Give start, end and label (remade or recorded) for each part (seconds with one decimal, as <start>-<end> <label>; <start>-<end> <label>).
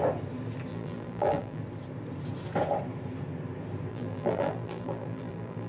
0.0-0.7 recorded; 0.7-1.6 remade; 1.6-3.9 recorded; 3.9-5.7 remade